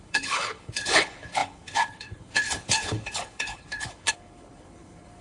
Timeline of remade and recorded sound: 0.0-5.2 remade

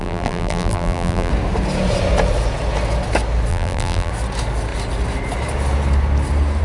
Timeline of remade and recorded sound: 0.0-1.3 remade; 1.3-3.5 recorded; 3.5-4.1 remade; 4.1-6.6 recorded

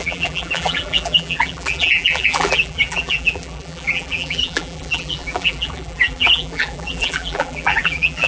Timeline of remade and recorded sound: 0.0-8.3 remade

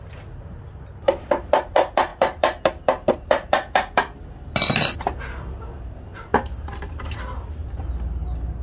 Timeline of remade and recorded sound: 0.0-8.6 recorded